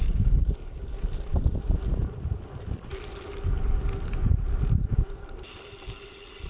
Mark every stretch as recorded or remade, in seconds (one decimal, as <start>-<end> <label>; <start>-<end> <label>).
0.0-6.5 recorded